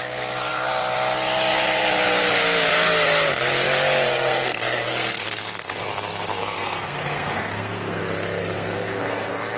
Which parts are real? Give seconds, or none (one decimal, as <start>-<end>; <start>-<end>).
0.0-4.1; 8.0-8.4